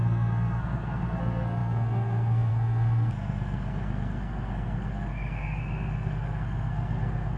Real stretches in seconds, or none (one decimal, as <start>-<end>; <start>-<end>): none